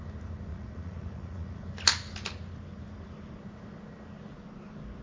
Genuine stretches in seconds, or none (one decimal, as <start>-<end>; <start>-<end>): 0.0-0.5; 1.6-5.0